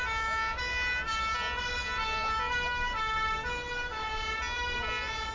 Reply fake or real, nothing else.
real